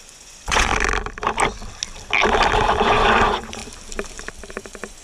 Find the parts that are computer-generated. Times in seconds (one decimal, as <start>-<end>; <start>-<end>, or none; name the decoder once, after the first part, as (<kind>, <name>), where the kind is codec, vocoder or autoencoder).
0.0-0.7 (vocoder, Vocos); 2.8-3.6; 4.5-5.0